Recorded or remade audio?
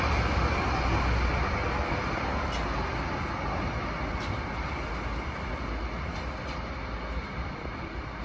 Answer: recorded